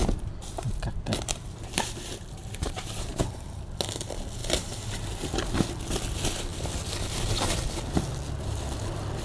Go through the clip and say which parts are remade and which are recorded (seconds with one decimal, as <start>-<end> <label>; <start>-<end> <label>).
0.0-3.6 remade; 3.6-4.4 recorded; 4.4-5.3 remade; 5.3-9.2 recorded